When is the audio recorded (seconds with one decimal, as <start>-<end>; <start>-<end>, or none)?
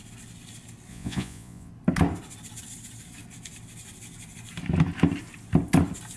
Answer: 0.0-0.9; 1.7-6.2